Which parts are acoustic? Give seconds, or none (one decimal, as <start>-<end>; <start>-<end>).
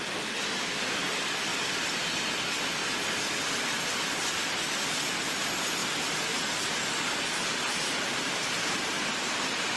0.0-1.5; 2.2-2.8; 3.5-5.8; 9.0-9.8